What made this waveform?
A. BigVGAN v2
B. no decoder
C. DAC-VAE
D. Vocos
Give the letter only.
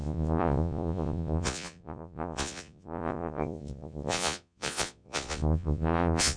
D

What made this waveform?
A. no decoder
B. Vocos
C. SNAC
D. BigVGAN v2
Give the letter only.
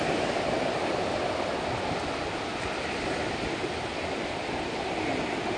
A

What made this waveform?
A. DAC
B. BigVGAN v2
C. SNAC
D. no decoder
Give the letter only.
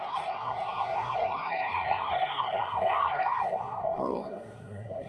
C